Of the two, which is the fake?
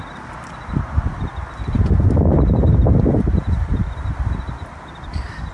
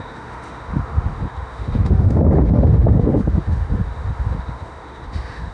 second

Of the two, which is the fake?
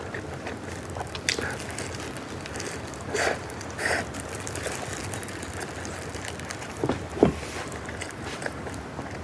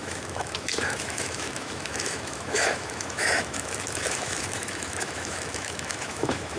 second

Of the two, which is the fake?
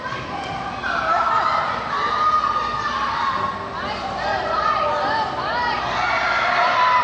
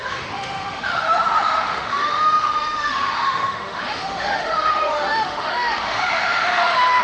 second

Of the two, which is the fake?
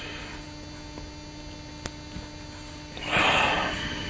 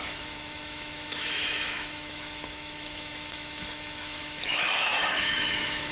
second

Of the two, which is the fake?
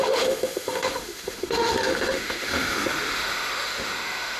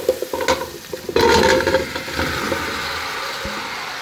first